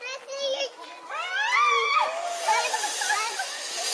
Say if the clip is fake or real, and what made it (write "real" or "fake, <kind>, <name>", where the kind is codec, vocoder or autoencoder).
real